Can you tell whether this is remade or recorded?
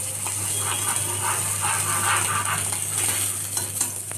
recorded